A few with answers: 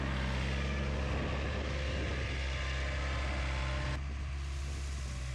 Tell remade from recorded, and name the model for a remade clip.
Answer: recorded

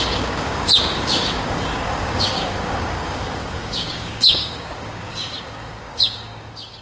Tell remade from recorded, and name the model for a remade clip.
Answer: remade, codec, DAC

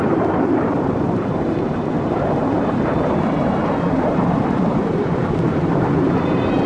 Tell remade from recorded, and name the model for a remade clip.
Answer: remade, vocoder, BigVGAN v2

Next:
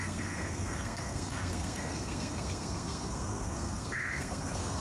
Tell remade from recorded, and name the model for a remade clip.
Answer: remade, codec, SNAC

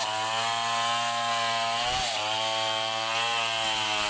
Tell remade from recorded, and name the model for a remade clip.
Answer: recorded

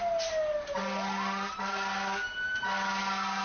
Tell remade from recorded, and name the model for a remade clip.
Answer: recorded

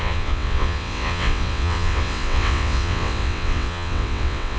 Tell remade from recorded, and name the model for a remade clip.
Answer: remade, vocoder, WaveNeXt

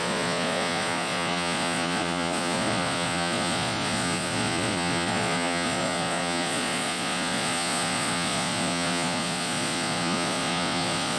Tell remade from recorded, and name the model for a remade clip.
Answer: remade, vocoder, Vocos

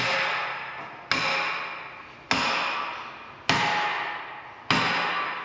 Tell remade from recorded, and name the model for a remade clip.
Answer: recorded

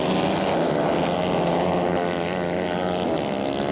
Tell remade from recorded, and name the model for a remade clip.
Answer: recorded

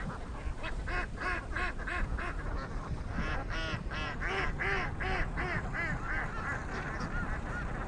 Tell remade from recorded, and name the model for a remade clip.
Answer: recorded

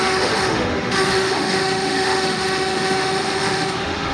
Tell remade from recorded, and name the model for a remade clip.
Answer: remade, autoencoder, DAC-VAE